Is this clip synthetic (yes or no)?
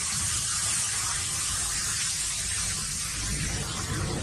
no